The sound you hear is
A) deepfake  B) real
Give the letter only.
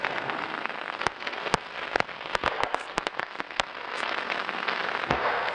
A